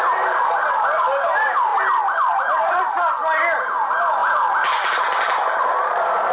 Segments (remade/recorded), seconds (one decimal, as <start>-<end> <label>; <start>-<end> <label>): 0.0-6.3 recorded